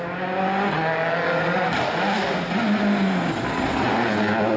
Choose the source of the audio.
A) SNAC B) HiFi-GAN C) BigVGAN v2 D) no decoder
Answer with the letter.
D